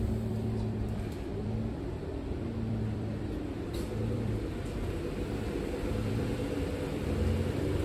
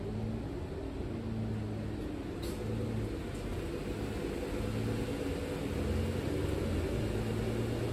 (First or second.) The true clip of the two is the second